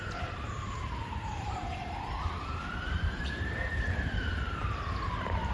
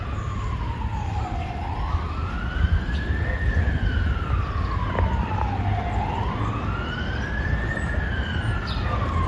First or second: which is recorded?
second